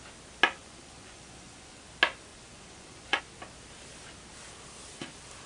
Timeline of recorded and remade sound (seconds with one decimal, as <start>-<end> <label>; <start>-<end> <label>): 0.0-0.6 recorded; 0.6-1.8 remade; 1.8-2.3 recorded; 2.3-3.2 remade; 3.2-5.5 recorded